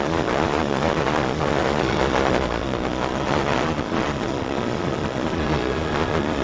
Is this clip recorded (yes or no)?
no